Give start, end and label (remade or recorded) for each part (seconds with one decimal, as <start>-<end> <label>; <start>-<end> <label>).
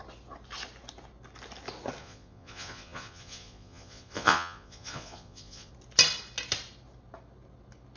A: 0.0-2.0 recorded; 2.0-5.7 remade; 5.7-8.0 recorded